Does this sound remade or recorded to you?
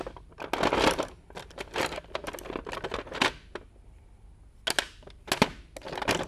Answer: recorded